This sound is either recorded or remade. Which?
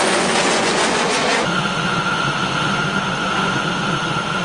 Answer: remade